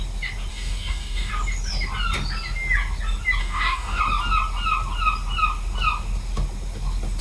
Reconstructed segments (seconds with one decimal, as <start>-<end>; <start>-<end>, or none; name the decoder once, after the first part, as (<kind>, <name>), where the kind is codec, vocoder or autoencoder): 0.5-1.3 (codec, DAC); 3.4-4.0